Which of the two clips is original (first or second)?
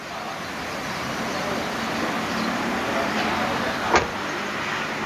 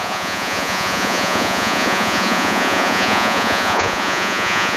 first